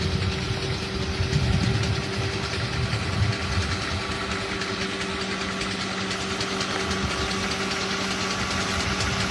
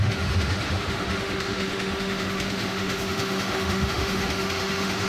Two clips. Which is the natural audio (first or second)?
first